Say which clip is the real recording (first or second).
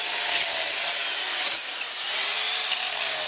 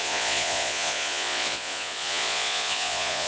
first